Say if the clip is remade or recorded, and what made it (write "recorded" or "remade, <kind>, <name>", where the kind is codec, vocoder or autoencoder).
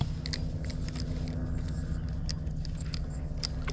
recorded